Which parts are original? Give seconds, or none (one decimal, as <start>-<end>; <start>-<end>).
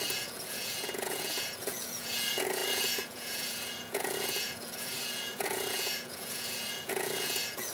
none